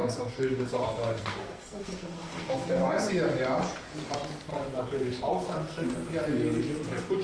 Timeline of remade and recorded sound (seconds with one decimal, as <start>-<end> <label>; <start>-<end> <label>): 0.0-3.1 remade; 3.1-4.5 recorded; 4.5-5.9 remade; 5.9-7.2 recorded